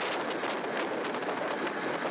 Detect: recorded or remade recorded